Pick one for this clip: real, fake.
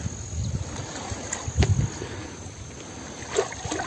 real